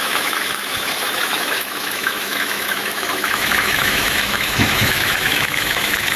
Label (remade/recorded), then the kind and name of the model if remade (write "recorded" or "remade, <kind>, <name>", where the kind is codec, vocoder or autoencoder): remade, autoencoder, DAC-VAE